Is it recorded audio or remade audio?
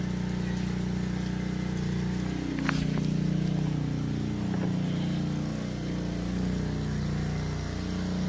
recorded